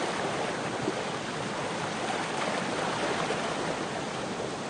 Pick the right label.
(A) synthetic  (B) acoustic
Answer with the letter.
A